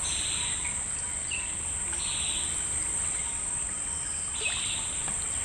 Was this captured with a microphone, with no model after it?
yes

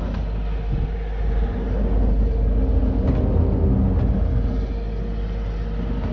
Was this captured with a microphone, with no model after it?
yes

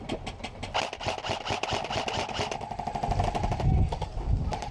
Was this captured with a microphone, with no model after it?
yes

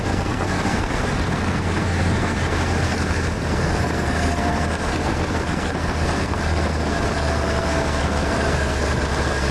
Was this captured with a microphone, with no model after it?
no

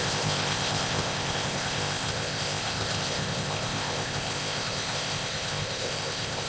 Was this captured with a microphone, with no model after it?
no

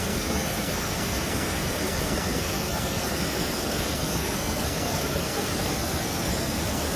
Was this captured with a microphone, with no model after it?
no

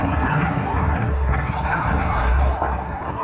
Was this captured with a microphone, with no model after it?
no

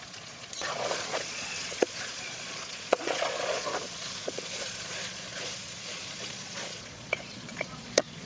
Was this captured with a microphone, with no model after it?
no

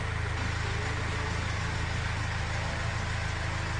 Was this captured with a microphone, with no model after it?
yes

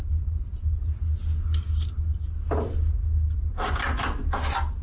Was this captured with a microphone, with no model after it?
yes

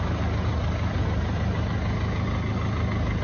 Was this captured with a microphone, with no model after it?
yes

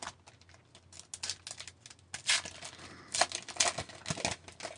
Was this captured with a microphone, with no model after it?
yes